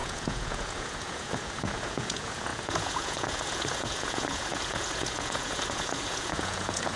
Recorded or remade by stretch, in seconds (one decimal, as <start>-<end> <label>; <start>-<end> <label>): 0.0-7.0 remade